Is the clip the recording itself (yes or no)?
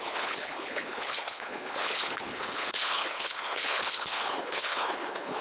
no